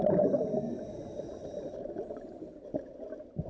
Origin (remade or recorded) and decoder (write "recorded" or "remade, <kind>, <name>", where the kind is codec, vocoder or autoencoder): recorded